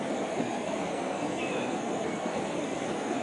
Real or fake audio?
fake